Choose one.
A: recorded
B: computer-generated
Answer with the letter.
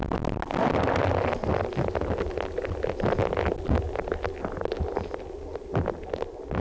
A